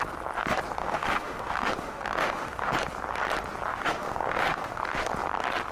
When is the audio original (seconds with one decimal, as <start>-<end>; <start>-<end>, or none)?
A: 0.0-0.8; 2.7-3.7; 4.8-5.7